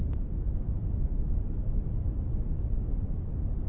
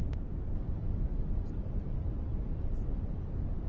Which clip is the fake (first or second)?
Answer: second